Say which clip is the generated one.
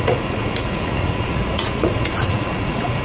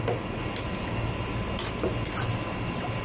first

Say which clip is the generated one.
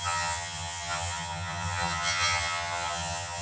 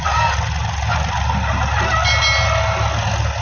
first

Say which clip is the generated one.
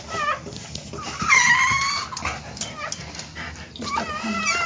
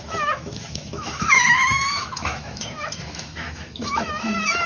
second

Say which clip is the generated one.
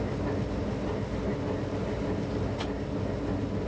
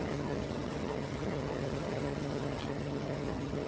second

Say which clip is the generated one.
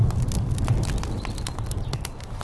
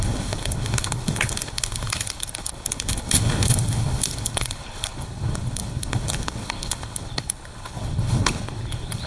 second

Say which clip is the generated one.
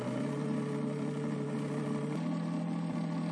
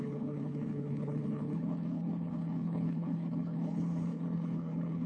second